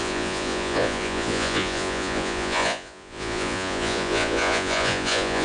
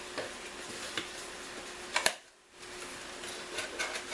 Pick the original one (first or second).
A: second